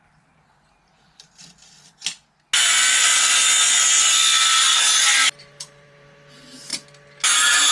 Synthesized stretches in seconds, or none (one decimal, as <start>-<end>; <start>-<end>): 0.0-1.4; 5.4-6.7; 7.3-7.7